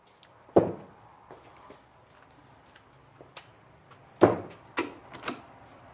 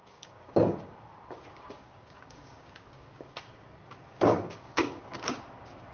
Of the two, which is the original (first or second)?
first